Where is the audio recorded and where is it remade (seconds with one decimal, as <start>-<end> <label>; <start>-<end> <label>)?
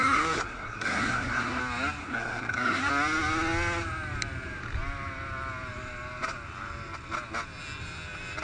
0.0-1.6 remade; 1.6-2.0 recorded; 2.0-2.9 remade; 2.9-8.4 recorded